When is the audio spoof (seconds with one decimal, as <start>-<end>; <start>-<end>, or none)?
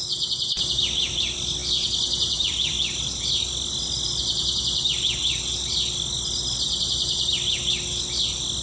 none